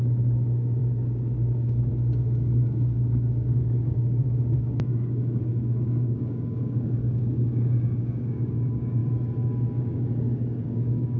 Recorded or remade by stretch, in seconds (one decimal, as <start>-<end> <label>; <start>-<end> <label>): 0.0-9.0 remade; 9.0-9.8 recorded; 9.8-11.2 remade

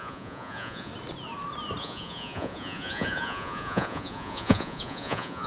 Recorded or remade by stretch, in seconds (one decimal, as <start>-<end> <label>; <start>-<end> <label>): 0.0-0.9 remade; 0.9-1.8 recorded; 1.8-5.5 remade

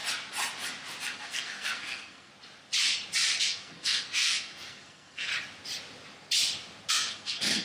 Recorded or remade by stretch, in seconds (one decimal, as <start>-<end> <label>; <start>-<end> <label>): 0.0-1.0 recorded; 1.0-2.3 remade; 2.3-3.4 recorded; 3.4-5.3 remade; 5.3-6.9 recorded; 6.9-7.6 remade

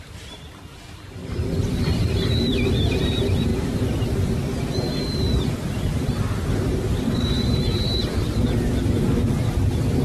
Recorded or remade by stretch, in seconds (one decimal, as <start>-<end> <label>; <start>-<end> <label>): 0.0-1.2 recorded; 1.2-2.1 remade; 2.1-10.0 recorded

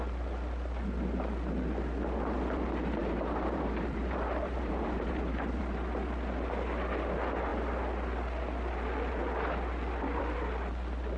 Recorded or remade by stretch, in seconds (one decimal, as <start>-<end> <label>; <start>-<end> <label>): 0.0-3.0 recorded; 3.0-5.6 remade; 5.6-11.2 recorded

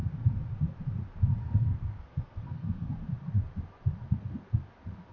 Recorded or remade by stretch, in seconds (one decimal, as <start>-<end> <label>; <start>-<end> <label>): 0.0-1.4 recorded; 1.4-2.9 remade; 2.9-5.1 recorded